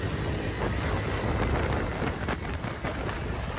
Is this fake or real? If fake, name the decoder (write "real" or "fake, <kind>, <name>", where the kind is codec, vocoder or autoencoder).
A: real